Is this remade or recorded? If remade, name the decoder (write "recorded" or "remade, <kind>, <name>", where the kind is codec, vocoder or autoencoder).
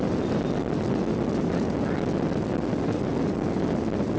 recorded